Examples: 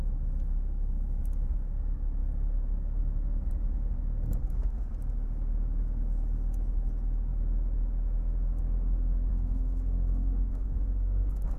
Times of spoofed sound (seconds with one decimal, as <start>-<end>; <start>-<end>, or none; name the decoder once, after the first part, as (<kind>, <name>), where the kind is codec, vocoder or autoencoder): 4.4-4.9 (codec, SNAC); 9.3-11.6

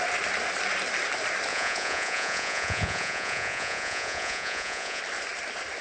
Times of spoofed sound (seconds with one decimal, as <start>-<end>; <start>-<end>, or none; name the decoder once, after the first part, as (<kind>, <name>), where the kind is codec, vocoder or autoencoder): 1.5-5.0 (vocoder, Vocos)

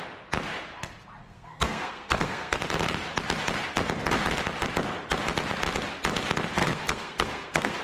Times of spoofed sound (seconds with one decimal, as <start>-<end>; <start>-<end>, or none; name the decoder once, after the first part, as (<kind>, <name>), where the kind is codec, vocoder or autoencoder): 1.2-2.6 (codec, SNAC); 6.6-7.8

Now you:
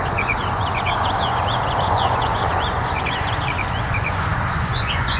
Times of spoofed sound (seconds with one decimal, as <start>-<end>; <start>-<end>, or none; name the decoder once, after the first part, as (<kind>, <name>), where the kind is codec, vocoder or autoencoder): 0.0-5.2 (vocoder, Vocos)

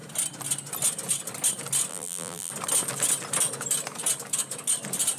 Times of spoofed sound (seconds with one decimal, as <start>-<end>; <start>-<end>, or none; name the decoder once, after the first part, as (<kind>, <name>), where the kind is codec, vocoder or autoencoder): 1.9-2.5 (vocoder, BigVGAN v2)

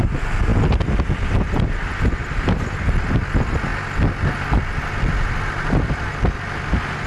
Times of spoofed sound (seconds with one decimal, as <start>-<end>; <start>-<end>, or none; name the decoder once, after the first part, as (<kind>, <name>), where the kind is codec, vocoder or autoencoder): none